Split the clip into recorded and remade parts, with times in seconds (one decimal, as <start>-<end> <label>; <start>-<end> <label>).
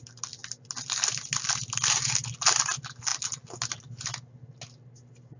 0.0-5.4 recorded